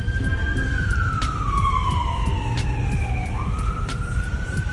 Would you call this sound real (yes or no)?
no